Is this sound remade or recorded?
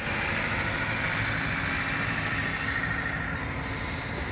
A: recorded